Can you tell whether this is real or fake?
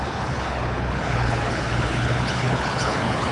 fake